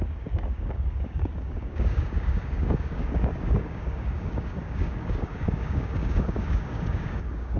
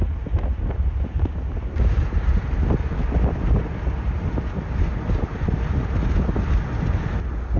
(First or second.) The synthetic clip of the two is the first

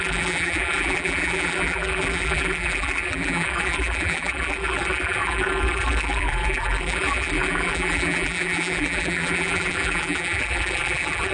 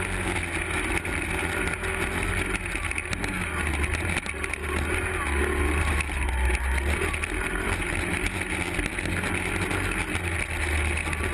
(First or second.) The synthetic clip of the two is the first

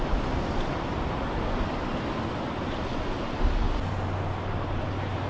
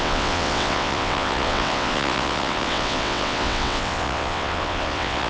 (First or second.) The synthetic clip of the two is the second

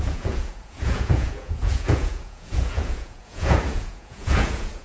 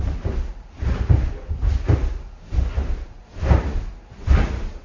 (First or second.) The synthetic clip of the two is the first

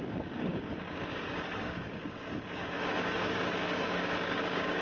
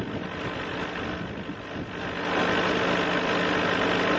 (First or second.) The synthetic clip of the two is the first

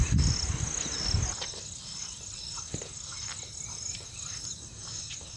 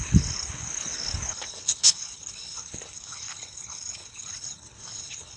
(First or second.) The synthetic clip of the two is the second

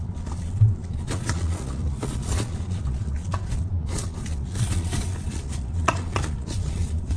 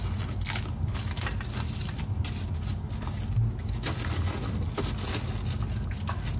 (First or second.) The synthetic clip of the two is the first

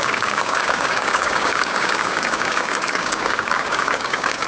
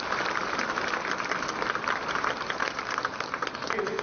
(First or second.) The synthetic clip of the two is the first